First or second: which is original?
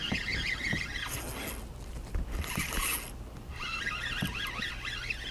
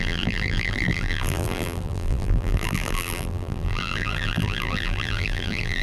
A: first